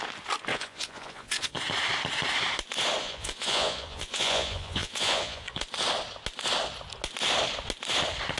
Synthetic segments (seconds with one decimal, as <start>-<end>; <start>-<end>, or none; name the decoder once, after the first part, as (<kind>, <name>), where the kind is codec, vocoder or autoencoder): 0.5-1.6 (vocoder, Vocos); 3.0-5.6